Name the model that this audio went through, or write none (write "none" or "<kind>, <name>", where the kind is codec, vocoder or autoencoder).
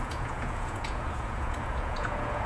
vocoder, Vocos